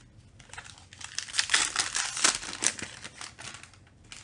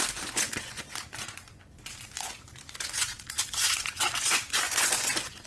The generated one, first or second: second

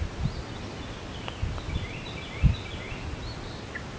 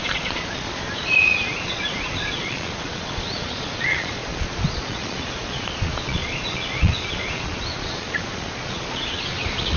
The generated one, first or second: second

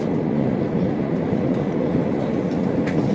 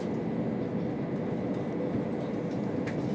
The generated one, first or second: first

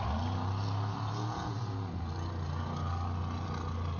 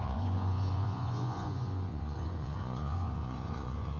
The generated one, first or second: second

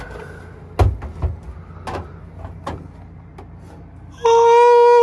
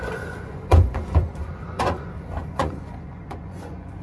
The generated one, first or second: second